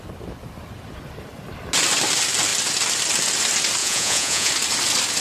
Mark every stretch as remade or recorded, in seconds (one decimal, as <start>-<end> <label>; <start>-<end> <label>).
0.0-3.8 recorded; 3.8-4.5 remade; 4.5-5.2 recorded